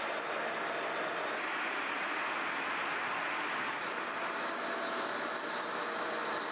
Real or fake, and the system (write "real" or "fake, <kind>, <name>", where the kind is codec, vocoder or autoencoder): real